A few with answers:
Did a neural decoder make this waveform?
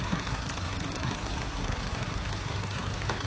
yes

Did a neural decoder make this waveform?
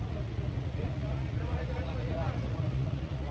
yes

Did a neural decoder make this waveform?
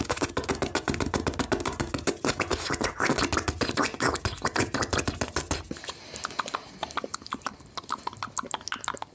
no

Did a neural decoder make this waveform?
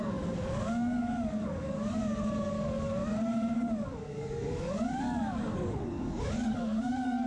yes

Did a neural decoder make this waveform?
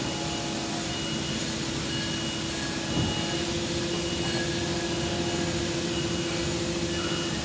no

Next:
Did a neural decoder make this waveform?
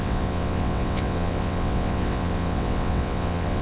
yes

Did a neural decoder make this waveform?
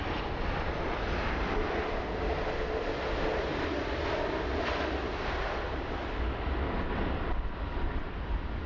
no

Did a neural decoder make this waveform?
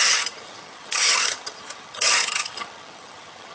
yes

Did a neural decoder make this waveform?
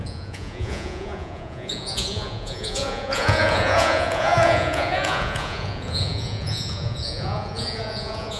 yes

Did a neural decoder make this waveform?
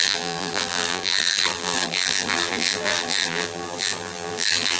yes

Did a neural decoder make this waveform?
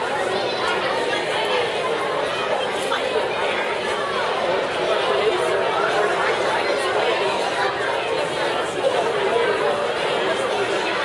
no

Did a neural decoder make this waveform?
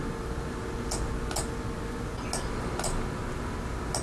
no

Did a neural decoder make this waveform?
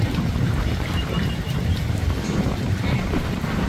yes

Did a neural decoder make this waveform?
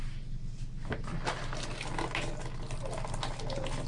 no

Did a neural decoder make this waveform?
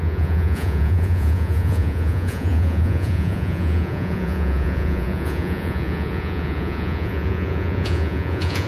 yes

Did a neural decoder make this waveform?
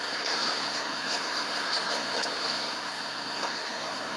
yes